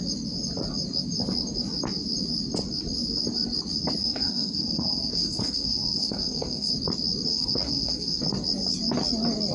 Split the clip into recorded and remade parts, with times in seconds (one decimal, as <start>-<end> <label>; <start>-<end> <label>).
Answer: 0.0-4.0 recorded; 4.0-6.7 remade; 6.7-7.3 recorded; 7.3-8.2 remade; 8.2-9.5 recorded